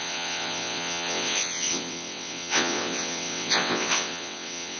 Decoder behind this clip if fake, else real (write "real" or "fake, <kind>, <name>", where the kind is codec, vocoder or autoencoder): fake, vocoder, WaveNeXt